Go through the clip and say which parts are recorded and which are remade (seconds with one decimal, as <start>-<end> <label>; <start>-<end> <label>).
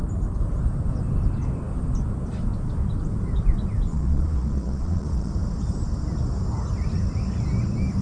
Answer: 0.0-3.9 recorded; 3.9-5.3 remade; 5.3-8.0 recorded